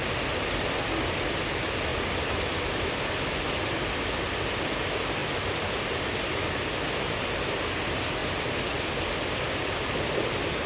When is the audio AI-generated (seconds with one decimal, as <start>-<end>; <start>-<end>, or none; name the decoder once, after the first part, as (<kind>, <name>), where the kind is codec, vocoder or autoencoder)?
0.0-1.2 (vocoder, BigVGAN v2); 1.9-2.7; 8.2-9.9